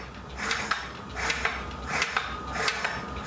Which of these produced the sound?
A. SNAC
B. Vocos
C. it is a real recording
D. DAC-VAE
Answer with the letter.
C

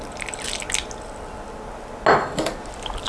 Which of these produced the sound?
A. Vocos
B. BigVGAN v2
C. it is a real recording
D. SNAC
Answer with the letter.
C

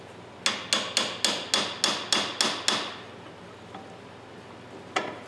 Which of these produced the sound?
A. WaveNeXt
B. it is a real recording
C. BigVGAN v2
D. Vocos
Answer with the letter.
B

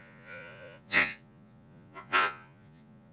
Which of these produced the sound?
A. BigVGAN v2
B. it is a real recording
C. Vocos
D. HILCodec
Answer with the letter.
C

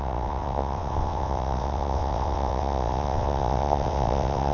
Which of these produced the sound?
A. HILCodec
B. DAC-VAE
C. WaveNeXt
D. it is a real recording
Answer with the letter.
C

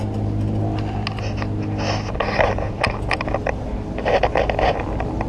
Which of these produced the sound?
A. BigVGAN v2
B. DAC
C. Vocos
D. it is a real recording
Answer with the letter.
D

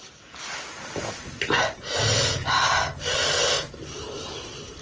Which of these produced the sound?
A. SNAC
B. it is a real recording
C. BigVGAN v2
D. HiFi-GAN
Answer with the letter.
B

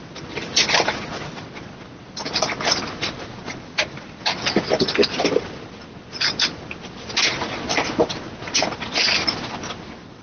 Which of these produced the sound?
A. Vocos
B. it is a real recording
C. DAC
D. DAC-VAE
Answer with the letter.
B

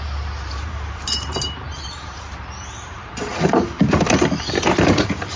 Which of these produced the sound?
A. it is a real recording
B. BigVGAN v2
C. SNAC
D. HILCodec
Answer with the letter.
B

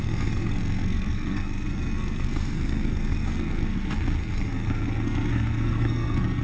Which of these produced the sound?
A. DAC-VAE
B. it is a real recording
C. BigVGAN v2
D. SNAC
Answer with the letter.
D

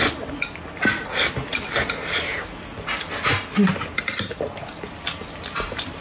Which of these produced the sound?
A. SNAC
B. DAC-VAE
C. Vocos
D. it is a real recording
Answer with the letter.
D